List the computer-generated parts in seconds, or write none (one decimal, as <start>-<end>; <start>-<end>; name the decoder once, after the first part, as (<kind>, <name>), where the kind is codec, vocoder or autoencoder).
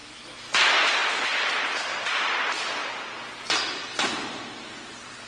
0.0-0.5 (autoencoder, DAC-VAE)